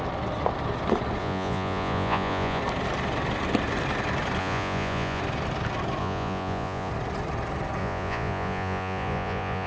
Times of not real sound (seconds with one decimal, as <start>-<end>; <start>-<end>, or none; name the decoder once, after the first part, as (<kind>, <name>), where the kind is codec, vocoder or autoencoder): 1.2-2.6 (vocoder, Vocos); 4.4-5.2; 6.0-6.9; 7.8-9.7